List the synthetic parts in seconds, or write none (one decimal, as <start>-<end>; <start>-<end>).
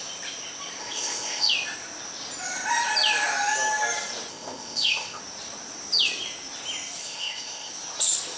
0.8-1.5; 4.3-5.2; 7.0-7.7